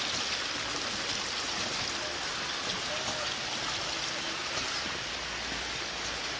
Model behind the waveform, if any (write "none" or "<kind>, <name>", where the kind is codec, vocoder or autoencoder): none